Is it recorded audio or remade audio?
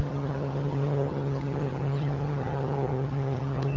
remade